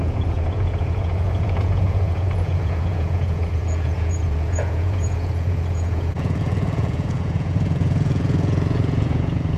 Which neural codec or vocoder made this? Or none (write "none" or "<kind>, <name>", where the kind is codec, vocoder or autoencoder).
vocoder, Vocos